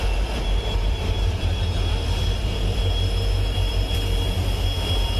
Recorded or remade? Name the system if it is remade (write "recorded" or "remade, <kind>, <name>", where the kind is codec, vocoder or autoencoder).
remade, vocoder, BigVGAN v2